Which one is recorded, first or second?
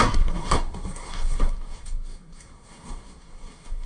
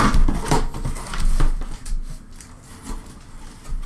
second